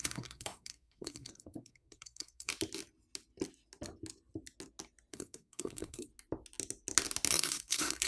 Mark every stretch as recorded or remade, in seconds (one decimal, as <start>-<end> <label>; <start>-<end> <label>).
0.0-2.5 remade; 2.5-5.1 recorded; 5.1-6.1 remade; 6.1-7.3 recorded; 7.3-8.1 remade